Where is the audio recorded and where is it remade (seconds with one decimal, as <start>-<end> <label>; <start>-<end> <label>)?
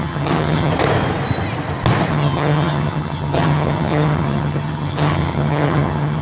0.0-0.7 remade; 0.7-2.1 recorded; 2.1-6.2 remade